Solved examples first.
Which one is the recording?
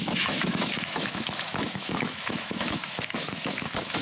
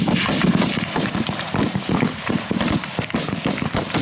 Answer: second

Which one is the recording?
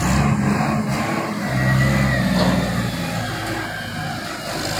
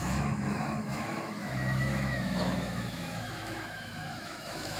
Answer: first